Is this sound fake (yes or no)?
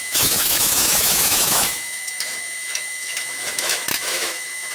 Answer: yes